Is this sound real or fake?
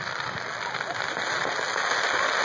real